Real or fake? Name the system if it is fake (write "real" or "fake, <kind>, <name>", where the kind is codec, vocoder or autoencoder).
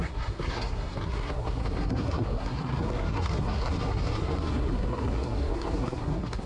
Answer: fake, codec, SNAC